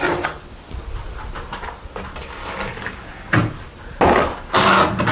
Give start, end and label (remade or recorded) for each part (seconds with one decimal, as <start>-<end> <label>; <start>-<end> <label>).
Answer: 0.0-2.4 recorded; 2.4-3.1 remade; 3.1-5.1 recorded